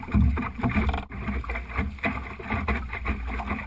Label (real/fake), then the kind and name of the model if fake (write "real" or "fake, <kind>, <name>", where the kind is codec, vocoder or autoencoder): real